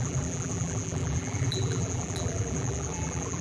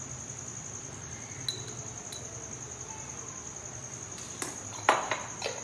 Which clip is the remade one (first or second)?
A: first